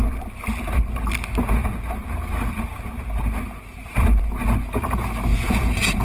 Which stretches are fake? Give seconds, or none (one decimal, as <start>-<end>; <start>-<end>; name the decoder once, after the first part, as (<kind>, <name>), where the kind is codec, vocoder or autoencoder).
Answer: 5.3-6.0 (vocoder, Vocos)